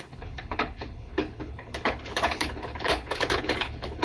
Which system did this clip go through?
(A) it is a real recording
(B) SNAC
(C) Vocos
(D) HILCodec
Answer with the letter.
D